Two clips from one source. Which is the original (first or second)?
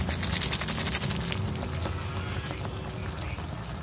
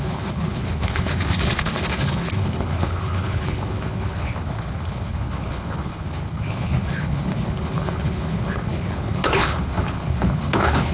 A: first